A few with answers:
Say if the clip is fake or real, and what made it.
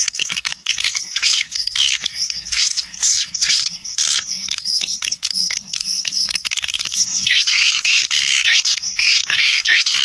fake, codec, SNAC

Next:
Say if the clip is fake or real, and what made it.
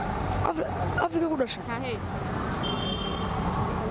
real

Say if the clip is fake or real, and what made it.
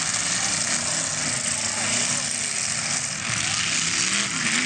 real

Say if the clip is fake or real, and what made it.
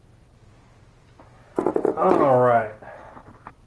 real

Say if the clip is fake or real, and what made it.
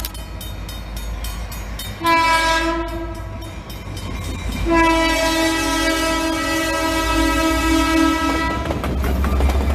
real